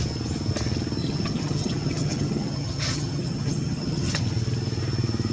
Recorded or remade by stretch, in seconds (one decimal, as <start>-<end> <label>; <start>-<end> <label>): 0.0-1.0 recorded; 1.0-4.2 remade; 4.2-5.3 recorded